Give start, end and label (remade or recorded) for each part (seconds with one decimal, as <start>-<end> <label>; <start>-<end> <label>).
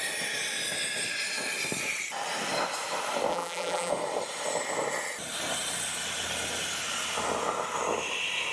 0.0-3.3 recorded; 3.3-3.9 remade; 3.9-8.5 recorded